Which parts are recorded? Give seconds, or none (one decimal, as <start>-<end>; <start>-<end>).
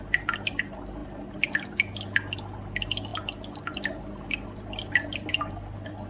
0.0-6.1